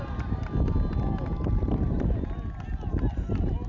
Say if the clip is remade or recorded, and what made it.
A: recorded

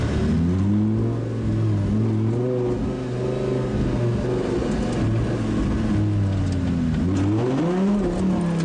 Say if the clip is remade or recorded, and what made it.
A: recorded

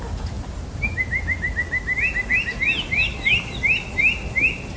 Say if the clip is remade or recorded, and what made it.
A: recorded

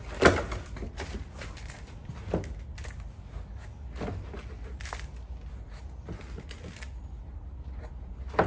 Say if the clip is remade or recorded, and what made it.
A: recorded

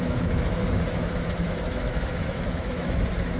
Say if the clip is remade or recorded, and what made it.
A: remade, autoencoder, DAC-VAE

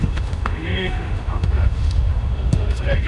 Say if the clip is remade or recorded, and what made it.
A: remade, autoencoder, DAC-VAE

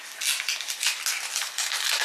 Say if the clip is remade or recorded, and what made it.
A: recorded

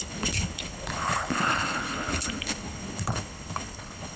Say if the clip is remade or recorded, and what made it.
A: remade, codec, HILCodec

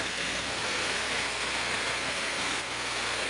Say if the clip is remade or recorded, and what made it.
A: remade, codec, SNAC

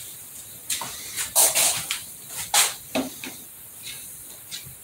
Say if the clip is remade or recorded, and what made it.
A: recorded